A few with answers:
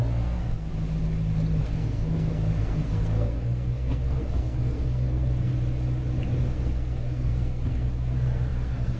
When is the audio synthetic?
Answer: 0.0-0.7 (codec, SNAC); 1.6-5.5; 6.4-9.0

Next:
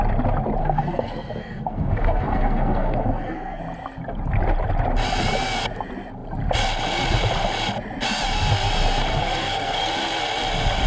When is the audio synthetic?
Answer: 0.6-3.6 (codec, SNAC); 9.1-9.9

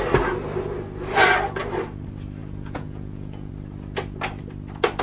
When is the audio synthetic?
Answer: 2.4-3.5 (vocoder, Vocos)

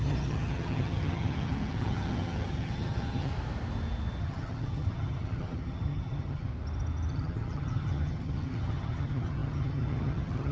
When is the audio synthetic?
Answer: 0.0-3.3 (vocoder, HiFi-GAN); 4.2-6.5; 7.1-10.5

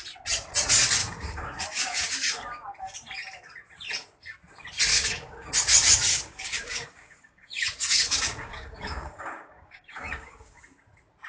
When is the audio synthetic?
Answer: 1.0-2.4 (codec, DAC); 4.9-5.5; 6.1-10.6

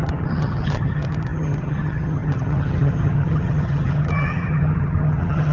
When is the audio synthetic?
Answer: 0.0-5.5 (vocoder, HiFi-GAN)